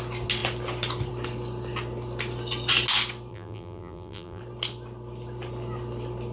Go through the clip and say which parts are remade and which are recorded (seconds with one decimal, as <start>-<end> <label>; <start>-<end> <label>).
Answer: 0.0-3.3 recorded; 3.3-4.4 remade; 4.4-6.3 recorded